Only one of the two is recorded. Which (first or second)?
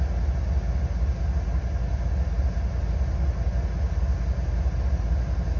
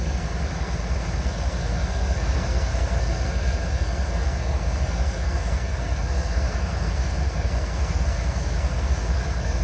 first